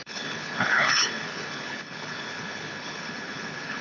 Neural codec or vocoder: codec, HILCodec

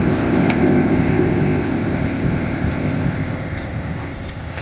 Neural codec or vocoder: codec, ZipCodec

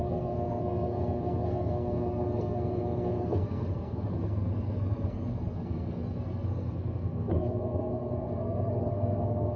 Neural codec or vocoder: codec, SNAC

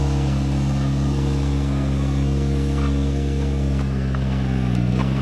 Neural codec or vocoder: codec, SNAC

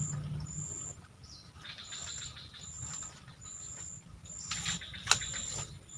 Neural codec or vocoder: none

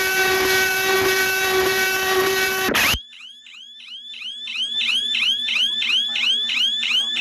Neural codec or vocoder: vocoder, BigVGAN v2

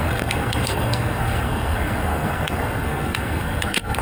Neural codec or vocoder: codec, SNAC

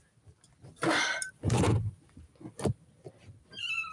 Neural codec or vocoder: none